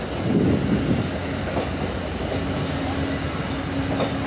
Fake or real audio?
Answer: real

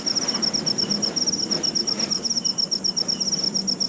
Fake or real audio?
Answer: real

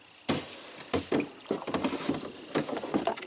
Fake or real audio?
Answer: real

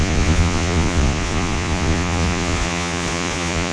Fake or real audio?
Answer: fake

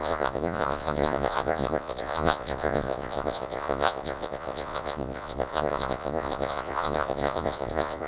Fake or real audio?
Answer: fake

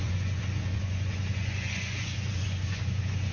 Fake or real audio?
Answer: fake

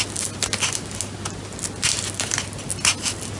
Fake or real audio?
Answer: real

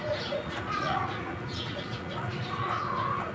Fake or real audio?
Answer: fake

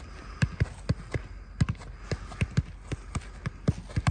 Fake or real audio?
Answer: real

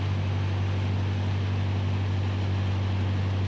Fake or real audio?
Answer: real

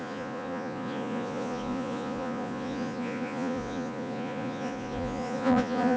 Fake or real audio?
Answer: fake